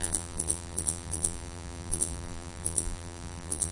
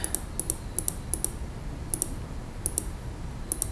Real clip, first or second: second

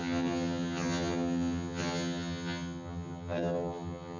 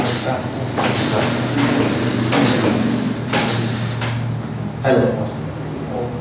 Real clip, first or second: second